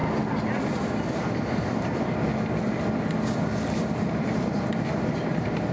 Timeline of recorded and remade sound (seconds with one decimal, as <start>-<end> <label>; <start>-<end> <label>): 0.0-1.2 recorded; 1.2-2.3 remade; 2.3-4.0 recorded; 4.0-5.7 remade

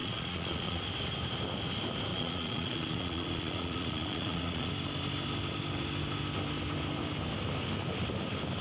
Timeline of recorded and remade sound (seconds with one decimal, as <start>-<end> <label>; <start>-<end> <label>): 0.0-0.8 remade; 0.8-2.1 recorded; 2.1-4.7 remade; 4.7-8.6 recorded